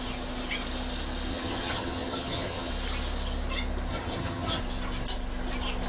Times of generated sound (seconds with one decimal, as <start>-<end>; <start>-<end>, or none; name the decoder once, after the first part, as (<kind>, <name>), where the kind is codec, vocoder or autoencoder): 1.3-2.7 (vocoder, HiFi-GAN); 3.9-4.6